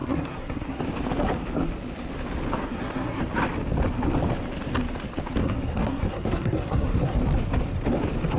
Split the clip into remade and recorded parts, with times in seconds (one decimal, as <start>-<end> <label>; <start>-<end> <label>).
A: 0.0-0.8 remade; 0.8-2.6 recorded; 2.6-3.2 remade; 3.2-5.4 recorded; 5.4-7.2 remade; 7.2-8.4 recorded